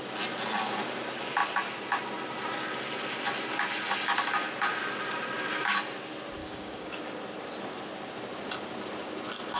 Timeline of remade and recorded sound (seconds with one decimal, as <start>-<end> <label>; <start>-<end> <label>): 0.0-6.4 recorded; 6.4-7.0 remade; 7.0-9.6 recorded